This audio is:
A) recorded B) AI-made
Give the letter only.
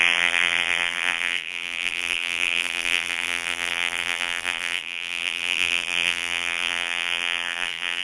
B